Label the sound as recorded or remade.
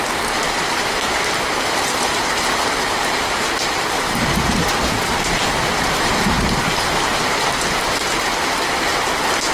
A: remade